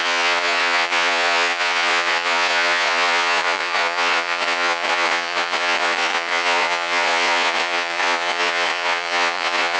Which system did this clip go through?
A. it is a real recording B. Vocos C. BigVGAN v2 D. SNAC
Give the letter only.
B